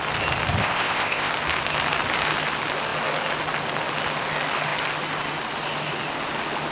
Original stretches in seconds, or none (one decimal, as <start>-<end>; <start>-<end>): 0.0-0.6; 1.3-6.7